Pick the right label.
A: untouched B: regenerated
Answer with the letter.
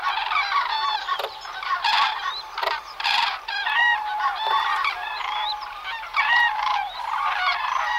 B